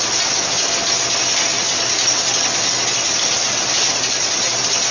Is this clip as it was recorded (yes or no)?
yes